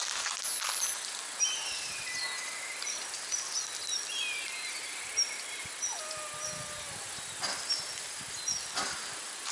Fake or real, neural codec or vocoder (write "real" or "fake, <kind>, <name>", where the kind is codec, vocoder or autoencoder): real